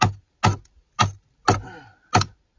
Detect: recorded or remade recorded